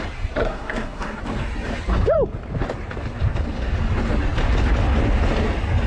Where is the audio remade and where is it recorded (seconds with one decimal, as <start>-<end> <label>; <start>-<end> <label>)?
0.0-0.4 recorded; 0.4-1.2 remade; 1.2-5.9 recorded